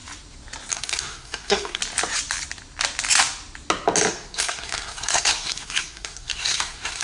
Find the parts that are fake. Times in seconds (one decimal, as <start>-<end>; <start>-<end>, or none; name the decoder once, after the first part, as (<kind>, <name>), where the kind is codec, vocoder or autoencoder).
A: 0.7-1.8 (codec, SNAC); 4.1-7.0